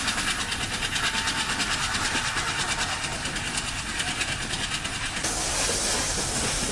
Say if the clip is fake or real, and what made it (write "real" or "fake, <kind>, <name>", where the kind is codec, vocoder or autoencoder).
real